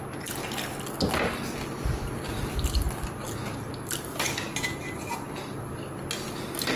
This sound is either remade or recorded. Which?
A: recorded